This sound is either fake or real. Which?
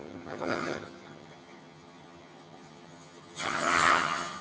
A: fake